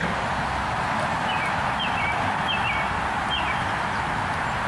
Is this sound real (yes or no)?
yes